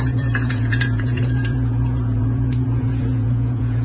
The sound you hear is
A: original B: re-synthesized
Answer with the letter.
B